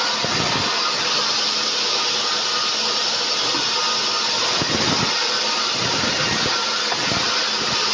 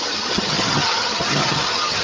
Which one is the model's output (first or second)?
second